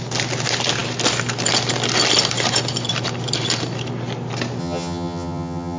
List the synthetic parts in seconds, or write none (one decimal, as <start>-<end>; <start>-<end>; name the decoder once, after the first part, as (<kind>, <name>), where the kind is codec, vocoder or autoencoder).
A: 4.6-5.8 (vocoder, HiFi-GAN)